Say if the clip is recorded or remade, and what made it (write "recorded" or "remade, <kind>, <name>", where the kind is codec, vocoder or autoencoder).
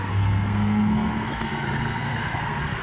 remade, codec, SNAC